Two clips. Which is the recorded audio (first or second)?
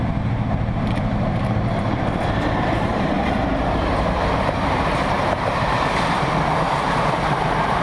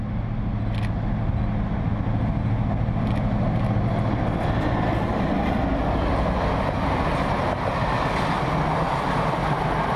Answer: second